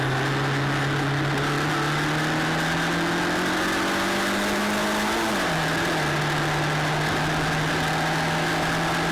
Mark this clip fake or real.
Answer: real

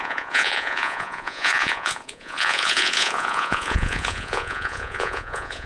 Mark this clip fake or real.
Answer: fake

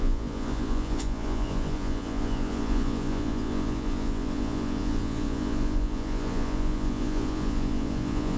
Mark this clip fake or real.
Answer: fake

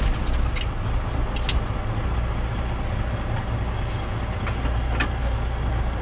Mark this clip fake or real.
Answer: real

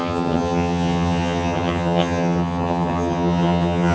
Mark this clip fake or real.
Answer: fake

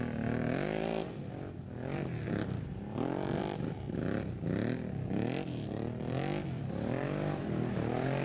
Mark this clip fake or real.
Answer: real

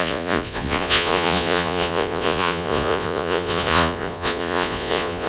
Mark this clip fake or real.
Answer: fake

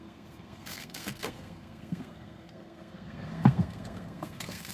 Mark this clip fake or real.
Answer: fake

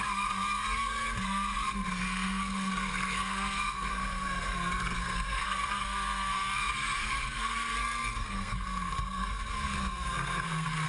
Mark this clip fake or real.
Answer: fake